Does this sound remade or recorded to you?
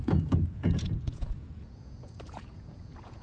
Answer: remade